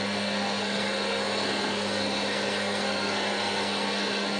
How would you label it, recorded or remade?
remade